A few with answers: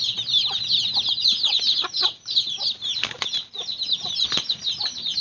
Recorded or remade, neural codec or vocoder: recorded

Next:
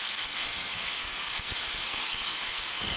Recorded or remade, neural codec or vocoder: remade, codec, SNAC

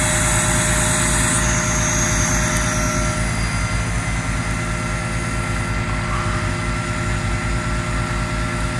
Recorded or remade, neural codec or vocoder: recorded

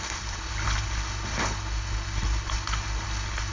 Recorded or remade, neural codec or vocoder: remade, codec, HILCodec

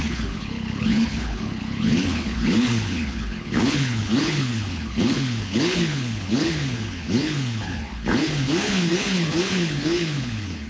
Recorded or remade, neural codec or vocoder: remade, codec, HILCodec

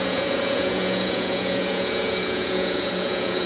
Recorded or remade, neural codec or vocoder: remade, vocoder, Vocos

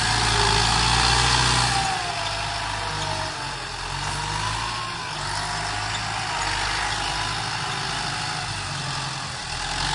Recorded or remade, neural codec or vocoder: recorded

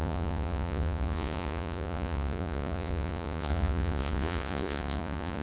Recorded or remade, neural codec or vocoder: remade, vocoder, Vocos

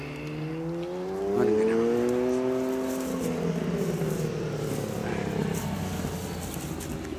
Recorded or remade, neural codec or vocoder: recorded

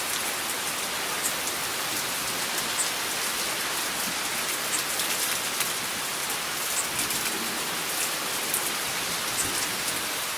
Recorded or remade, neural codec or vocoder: recorded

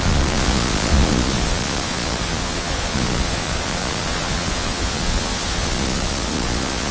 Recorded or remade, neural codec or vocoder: remade, vocoder, Vocos